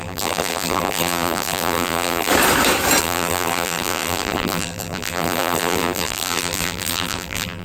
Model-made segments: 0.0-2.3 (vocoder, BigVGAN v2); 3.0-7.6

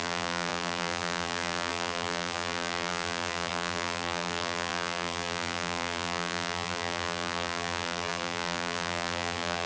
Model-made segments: 0.0-9.7 (vocoder, BigVGAN v2)